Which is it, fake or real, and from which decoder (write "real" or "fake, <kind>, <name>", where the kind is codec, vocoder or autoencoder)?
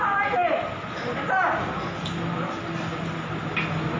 real